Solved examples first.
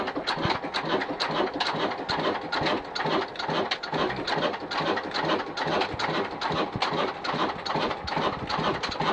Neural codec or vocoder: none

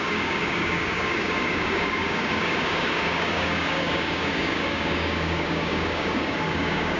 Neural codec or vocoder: codec, DAC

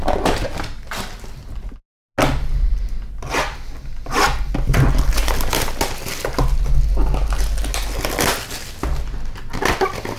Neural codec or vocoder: none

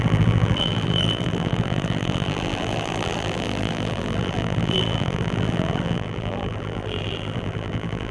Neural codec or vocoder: vocoder, BigVGAN v2